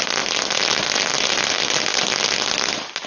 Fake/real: real